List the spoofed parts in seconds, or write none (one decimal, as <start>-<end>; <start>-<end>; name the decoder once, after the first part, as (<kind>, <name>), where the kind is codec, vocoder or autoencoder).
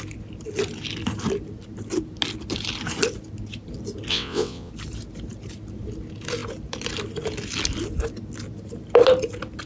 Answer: 4.1-4.7 (vocoder, WaveNeXt)